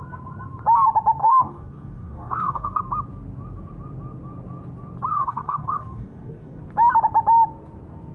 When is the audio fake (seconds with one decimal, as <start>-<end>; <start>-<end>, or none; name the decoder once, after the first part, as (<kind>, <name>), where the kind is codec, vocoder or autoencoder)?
1.2-2.8 (codec, DAC); 5.1-6.6